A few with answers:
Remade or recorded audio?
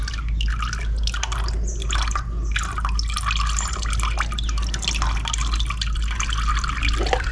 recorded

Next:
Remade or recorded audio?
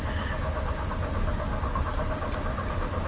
recorded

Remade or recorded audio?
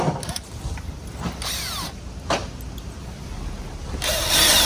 recorded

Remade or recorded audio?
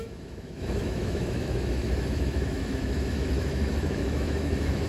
remade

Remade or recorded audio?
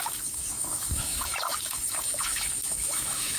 remade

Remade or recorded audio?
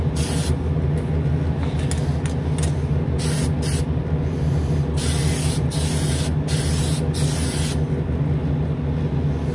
recorded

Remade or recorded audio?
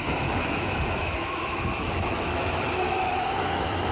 remade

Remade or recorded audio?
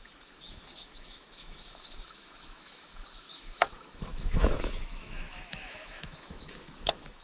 remade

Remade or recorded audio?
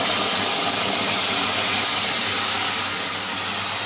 recorded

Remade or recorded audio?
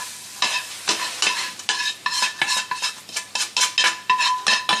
recorded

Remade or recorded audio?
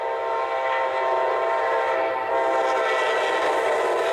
recorded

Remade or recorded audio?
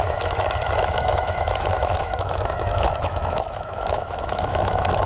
remade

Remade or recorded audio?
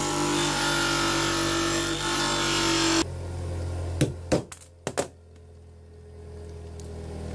recorded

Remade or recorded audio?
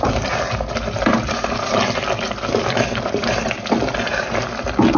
recorded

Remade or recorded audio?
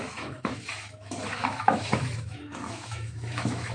remade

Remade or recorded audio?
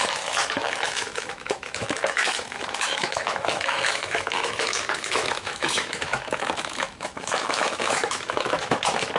remade